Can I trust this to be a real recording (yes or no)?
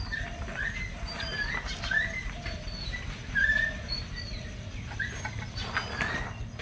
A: yes